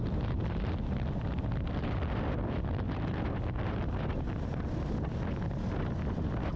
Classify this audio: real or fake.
real